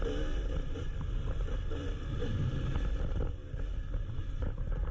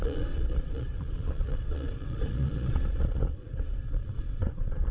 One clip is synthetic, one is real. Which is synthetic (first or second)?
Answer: second